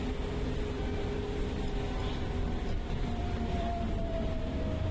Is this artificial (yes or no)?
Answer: yes